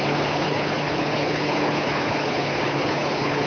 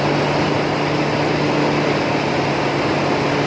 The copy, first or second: first